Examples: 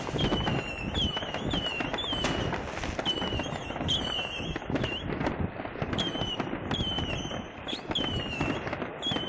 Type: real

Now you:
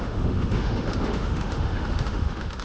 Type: fake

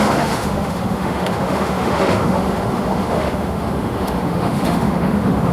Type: fake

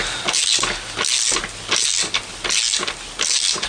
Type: real